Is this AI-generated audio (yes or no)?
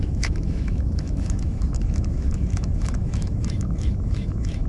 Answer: yes